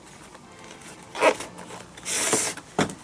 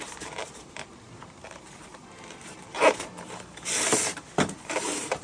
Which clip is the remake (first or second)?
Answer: second